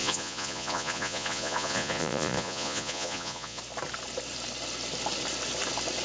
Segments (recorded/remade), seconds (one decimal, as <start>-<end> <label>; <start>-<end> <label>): 0.0-3.6 remade; 3.6-6.0 recorded